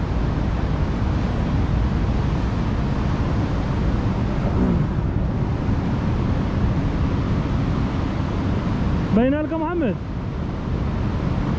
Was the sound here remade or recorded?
recorded